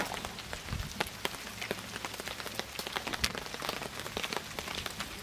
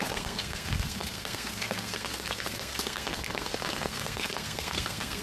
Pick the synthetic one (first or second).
second